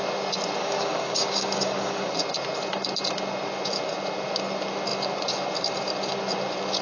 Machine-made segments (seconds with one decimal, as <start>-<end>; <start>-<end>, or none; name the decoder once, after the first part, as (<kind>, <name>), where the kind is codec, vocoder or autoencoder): 0.6-2.1 (codec, DAC)